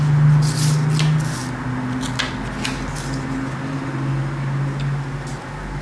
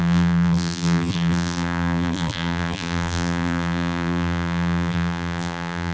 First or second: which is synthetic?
second